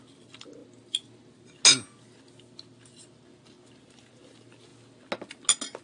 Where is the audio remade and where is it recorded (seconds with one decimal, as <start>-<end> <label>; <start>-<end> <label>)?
0.0-5.8 recorded